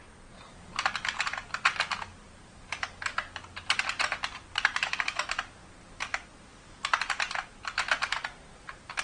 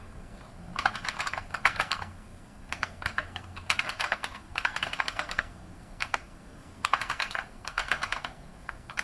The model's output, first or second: second